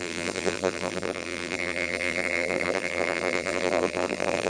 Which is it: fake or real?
fake